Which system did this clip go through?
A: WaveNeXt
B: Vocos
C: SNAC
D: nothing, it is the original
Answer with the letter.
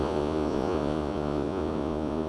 B